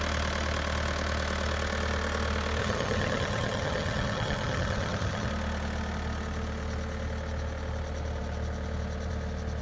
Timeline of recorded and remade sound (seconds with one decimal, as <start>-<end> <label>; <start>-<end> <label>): 0.0-2.6 recorded; 2.6-5.3 remade; 5.3-9.6 recorded